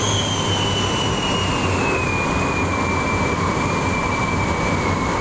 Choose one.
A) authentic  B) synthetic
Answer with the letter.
A